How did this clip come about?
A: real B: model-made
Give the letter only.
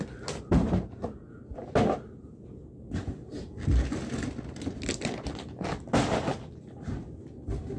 A